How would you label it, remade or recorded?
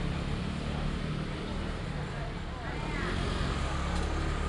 recorded